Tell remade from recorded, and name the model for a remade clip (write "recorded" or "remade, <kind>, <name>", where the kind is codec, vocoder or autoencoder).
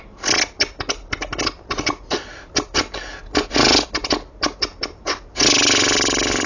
recorded